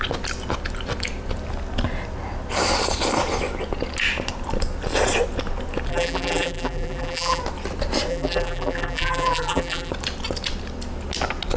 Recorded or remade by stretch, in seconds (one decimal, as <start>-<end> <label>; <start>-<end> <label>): 0.0-5.9 recorded; 5.9-7.4 remade; 7.4-8.1 recorded; 8.1-9.9 remade; 9.9-11.6 recorded

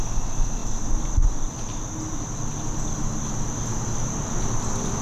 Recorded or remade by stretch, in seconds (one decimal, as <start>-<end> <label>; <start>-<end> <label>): 0.0-5.0 recorded

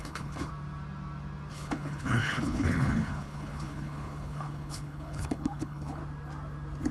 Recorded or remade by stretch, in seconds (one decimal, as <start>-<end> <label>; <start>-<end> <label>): 0.0-0.5 remade; 0.5-1.5 recorded; 1.5-6.0 remade; 6.0-6.9 recorded

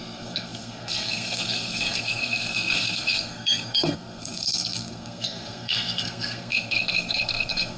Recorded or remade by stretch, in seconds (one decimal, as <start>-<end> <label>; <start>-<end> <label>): 0.0-7.8 remade

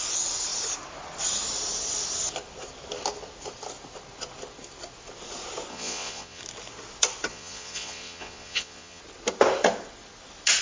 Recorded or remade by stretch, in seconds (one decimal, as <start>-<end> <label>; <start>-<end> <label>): 0.0-5.7 recorded; 5.7-6.4 remade; 6.4-7.3 recorded; 7.3-9.0 remade; 9.0-10.6 recorded

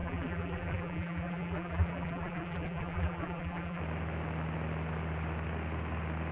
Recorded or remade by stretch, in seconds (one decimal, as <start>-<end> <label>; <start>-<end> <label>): 0.0-3.8 remade; 3.8-6.3 recorded

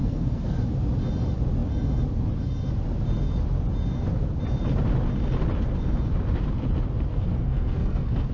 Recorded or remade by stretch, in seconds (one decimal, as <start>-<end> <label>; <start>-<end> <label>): 0.0-0.6 remade; 0.6-7.1 recorded; 7.1-8.3 remade

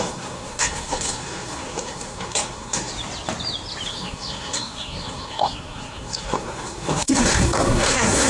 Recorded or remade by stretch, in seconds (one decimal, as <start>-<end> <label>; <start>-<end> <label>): 0.0-2.9 remade; 2.9-3.9 recorded; 3.9-8.3 remade